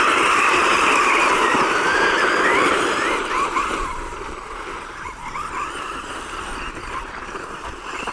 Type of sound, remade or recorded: remade